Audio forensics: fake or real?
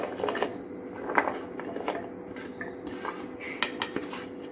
real